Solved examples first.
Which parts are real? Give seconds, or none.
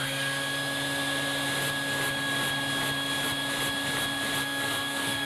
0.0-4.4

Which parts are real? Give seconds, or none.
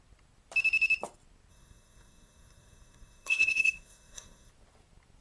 0.0-1.5; 4.5-5.2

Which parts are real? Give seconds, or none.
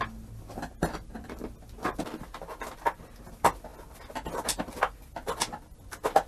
0.0-6.3